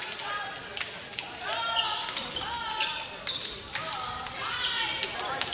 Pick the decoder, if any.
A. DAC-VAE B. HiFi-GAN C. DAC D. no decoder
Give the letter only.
D